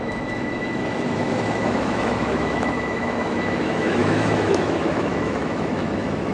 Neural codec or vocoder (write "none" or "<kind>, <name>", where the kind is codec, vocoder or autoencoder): autoencoder, DAC-VAE